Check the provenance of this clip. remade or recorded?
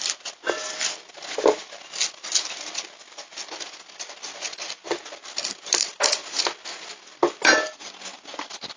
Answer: recorded